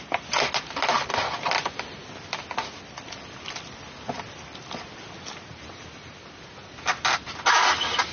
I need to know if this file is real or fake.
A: real